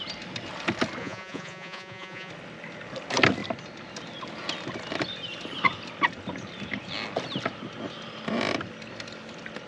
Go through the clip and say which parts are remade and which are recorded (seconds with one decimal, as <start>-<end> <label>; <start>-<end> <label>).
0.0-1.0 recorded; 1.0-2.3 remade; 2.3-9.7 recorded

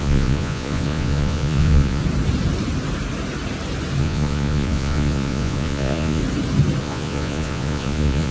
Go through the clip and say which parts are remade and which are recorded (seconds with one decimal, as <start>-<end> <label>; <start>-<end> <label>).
0.0-2.0 remade; 2.0-4.0 recorded; 4.0-6.2 remade; 6.2-6.8 recorded; 6.8-8.3 remade

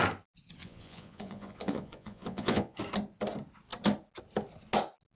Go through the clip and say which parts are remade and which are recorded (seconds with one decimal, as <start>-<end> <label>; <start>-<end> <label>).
0.0-0.6 recorded; 0.6-2.8 remade; 2.8-5.1 recorded

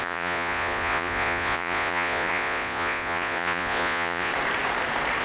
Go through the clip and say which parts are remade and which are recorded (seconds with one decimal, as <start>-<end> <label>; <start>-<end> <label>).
0.0-4.3 remade; 4.3-5.2 recorded

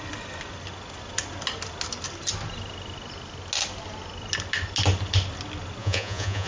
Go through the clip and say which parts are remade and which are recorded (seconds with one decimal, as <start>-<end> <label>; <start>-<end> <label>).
0.0-5.8 recorded; 5.8-6.5 remade

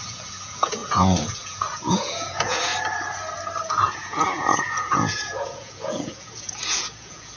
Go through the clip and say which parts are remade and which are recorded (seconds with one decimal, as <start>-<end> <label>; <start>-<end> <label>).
0.0-2.7 remade; 2.7-3.7 recorded; 3.7-7.4 remade

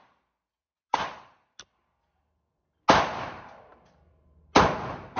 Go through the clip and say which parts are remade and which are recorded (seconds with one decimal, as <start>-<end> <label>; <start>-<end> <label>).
0.0-5.2 recorded